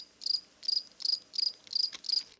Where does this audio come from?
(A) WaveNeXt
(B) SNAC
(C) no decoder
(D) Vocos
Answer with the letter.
C